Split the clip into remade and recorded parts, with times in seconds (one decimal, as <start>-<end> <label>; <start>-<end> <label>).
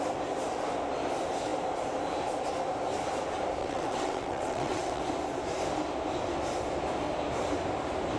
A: 0.0-3.6 recorded; 3.6-5.0 remade; 5.0-8.2 recorded